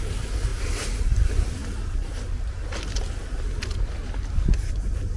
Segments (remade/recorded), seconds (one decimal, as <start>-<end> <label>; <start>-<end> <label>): 0.0-5.2 recorded